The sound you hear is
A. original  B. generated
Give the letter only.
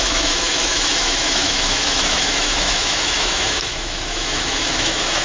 B